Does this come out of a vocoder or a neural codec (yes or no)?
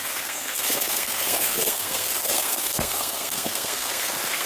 yes